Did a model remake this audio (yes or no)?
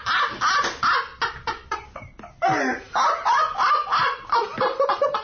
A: no